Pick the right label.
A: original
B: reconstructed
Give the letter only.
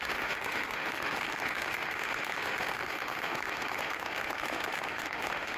B